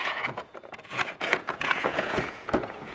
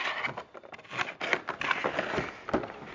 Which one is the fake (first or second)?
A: first